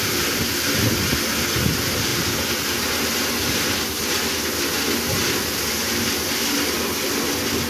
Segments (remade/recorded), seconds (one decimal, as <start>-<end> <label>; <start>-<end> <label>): 0.0-7.7 recorded